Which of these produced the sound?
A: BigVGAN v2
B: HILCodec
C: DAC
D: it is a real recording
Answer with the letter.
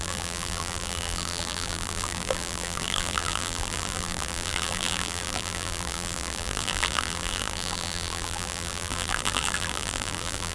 A